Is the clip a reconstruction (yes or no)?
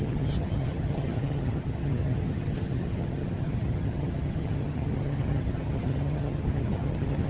yes